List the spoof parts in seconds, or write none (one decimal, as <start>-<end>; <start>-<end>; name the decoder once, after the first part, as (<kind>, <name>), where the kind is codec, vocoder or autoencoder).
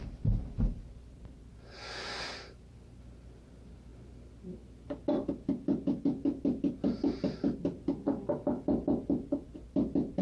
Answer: none